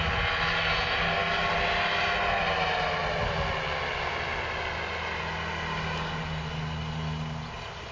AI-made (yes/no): no